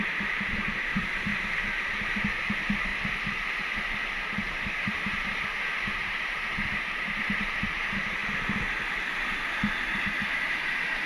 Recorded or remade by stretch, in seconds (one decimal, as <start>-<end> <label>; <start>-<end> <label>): 0.0-1.3 remade; 1.3-2.4 recorded; 2.4-2.9 remade; 2.9-4.7 recorded; 4.7-8.2 remade; 8.2-10.3 recorded; 10.3-11.1 remade